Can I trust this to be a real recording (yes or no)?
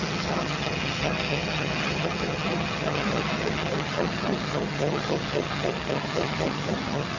no